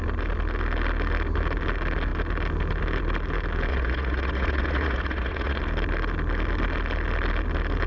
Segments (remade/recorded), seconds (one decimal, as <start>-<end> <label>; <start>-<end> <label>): 0.0-3.7 recorded; 3.7-5.6 remade; 5.6-7.9 recorded